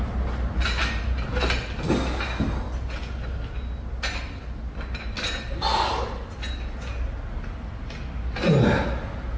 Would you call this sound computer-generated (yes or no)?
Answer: no